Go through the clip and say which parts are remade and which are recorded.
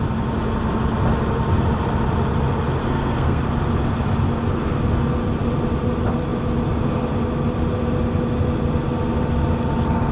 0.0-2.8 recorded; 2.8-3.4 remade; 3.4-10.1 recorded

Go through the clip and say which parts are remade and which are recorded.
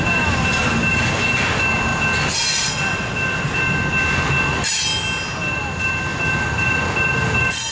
0.0-7.7 recorded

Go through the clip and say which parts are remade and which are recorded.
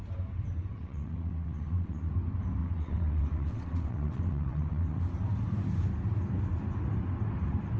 0.0-0.7 recorded; 0.7-2.1 remade; 2.1-2.6 recorded; 2.6-5.0 remade; 5.0-7.8 recorded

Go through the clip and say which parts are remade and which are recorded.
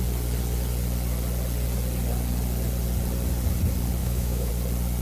0.0-4.0 recorded; 4.0-4.5 remade; 4.5-5.0 recorded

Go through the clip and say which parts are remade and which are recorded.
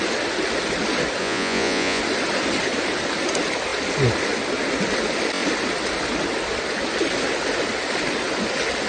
0.0-1.2 recorded; 1.2-2.0 remade; 2.0-8.9 recorded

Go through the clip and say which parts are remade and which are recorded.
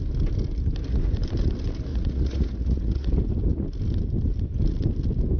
0.0-1.9 recorded; 1.9-3.1 remade; 3.1-5.4 recorded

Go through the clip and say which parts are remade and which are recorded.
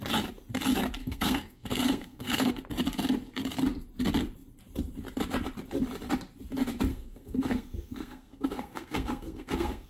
0.0-1.0 recorded; 1.0-2.5 remade; 2.5-6.9 recorded; 6.9-9.9 remade